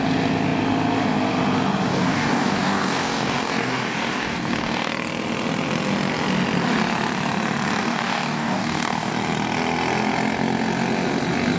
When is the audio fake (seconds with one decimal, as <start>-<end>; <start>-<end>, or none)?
1.9-4.9; 7.8-9.1